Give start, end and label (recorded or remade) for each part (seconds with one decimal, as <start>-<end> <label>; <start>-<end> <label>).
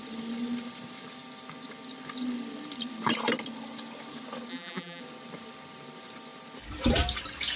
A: 0.0-4.5 recorded; 4.5-5.0 remade; 5.0-7.6 recorded